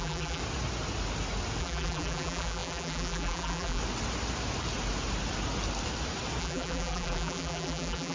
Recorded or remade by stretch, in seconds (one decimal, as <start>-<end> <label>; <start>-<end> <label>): 0.0-0.4 remade; 0.4-1.6 recorded; 1.6-3.8 remade; 3.8-6.4 recorded; 6.4-8.1 remade

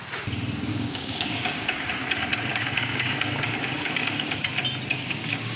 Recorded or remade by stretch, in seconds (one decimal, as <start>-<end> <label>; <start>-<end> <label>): 0.0-0.7 recorded; 0.7-1.9 remade; 1.9-2.5 recorded; 2.5-4.4 remade; 4.4-4.9 recorded; 4.9-5.6 remade

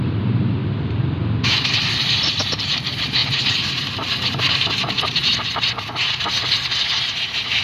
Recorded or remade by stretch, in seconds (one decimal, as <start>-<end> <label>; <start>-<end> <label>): 0.0-0.6 remade; 0.6-2.0 recorded; 2.0-5.3 remade; 5.3-7.1 recorded; 7.1-7.6 remade

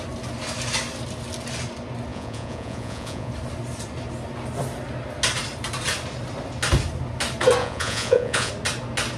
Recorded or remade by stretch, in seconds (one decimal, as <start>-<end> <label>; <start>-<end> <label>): 0.0-2.1 recorded; 2.1-3.3 remade; 3.3-7.6 recorded; 7.6-8.5 remade; 8.5-9.2 recorded

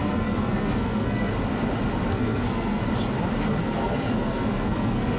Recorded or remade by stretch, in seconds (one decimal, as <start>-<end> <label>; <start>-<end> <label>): 0.0-1.3 remade; 1.3-2.1 recorded; 2.1-2.8 remade; 2.8-3.6 recorded; 3.6-5.2 remade

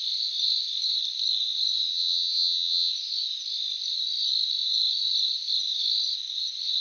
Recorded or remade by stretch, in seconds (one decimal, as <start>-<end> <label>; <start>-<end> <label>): 0.0-1.9 recorded; 1.9-2.9 remade; 2.9-6.8 recorded

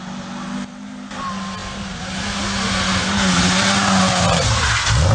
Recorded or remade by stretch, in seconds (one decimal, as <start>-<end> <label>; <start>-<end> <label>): 0.0-5.1 recorded